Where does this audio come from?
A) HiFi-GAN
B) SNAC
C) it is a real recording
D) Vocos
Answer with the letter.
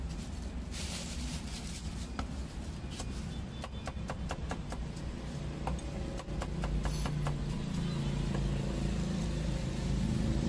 C